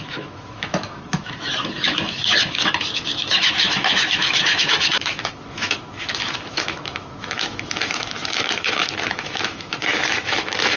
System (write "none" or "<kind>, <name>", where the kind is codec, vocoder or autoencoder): autoencoder, DAC-VAE